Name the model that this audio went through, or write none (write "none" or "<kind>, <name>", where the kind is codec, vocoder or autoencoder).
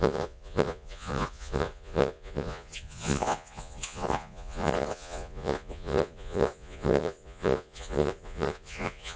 vocoder, Vocos